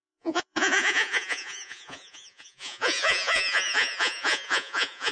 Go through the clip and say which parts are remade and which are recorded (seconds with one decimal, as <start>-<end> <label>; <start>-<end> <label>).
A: 0.0-5.1 remade